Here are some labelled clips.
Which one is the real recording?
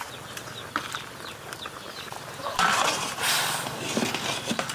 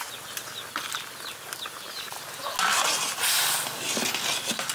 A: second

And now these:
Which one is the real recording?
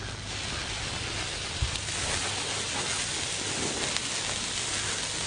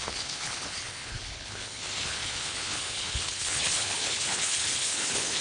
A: first